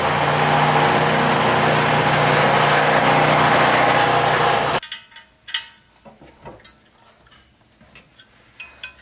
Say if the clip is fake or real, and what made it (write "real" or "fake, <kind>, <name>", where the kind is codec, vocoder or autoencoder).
real